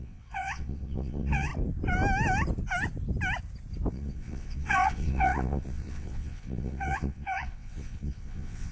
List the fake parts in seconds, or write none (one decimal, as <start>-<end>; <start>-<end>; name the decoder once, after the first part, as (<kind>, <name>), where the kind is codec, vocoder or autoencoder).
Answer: 0.0-1.5 (vocoder, WaveNeXt); 3.9-8.7